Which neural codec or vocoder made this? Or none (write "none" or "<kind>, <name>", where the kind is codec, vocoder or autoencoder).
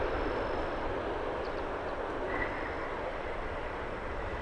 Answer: none